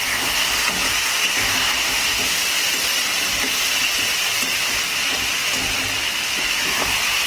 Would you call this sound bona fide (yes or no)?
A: yes